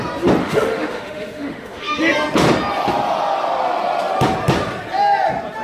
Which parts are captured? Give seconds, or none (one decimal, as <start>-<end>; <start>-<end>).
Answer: 0.0-0.4; 2.0-5.6